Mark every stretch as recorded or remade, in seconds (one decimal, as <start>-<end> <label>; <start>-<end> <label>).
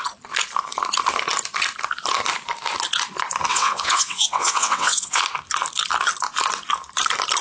0.0-3.5 recorded; 3.5-5.2 remade; 5.2-7.4 recorded